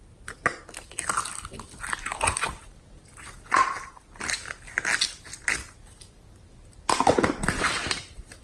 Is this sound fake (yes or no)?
no